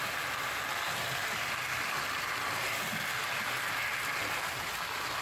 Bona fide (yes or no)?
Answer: yes